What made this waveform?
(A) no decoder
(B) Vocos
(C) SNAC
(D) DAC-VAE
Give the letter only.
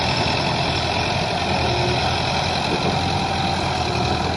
A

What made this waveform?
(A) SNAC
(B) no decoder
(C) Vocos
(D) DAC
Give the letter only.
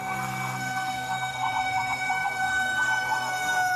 A